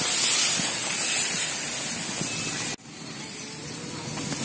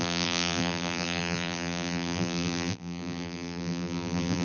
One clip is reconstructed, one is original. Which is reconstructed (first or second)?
second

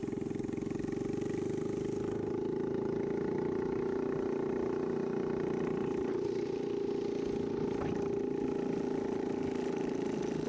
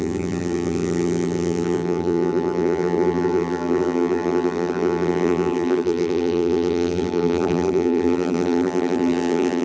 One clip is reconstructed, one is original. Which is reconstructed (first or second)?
second